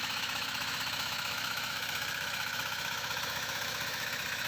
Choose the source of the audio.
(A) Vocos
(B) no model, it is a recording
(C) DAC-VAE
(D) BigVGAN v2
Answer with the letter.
C